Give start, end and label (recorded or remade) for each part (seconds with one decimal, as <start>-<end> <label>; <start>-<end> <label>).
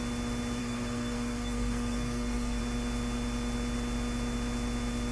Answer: 0.0-0.6 recorded; 0.6-2.6 remade; 2.6-5.1 recorded